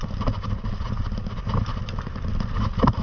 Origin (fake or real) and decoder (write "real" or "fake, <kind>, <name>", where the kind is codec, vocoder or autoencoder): real